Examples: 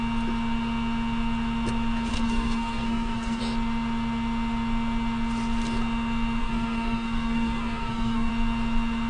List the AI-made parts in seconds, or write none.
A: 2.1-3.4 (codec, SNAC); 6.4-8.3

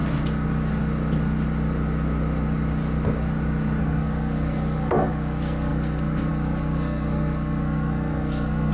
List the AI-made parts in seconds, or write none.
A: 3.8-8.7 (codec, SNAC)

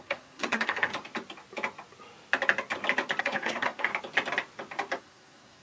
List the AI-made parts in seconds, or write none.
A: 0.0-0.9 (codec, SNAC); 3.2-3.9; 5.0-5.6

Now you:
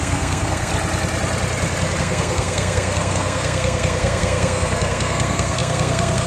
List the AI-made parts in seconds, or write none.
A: 0.0-0.7 (codec, SNAC); 2.0-6.3

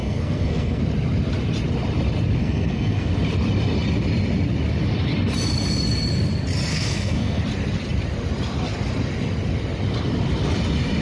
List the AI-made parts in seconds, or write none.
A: 0.0-0.8 (codec, SNAC); 2.4-3.1; 6.7-7.4

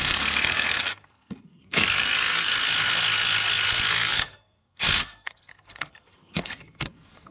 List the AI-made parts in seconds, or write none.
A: 0.0-2.5 (codec, SNAC); 3.9-7.3